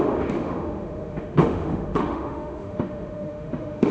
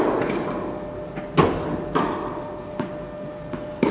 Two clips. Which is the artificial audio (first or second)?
first